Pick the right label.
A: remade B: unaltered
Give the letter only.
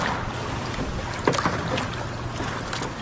B